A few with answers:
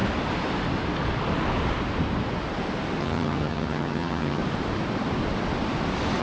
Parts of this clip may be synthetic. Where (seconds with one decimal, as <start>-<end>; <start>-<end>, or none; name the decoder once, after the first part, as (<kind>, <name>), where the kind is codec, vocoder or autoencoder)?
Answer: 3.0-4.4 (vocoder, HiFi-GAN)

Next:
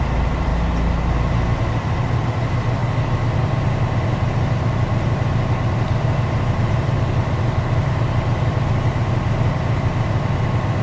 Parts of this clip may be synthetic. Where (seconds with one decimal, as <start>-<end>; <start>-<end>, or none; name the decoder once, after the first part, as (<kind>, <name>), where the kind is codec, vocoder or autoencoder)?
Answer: 0.0-0.5 (vocoder, BigVGAN v2); 1.6-2.8; 6.0-10.8

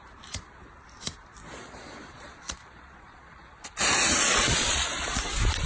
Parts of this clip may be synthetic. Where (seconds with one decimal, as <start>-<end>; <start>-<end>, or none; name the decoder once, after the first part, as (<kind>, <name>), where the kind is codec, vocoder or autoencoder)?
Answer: 1.4-3.5 (vocoder, Vocos); 4.2-5.0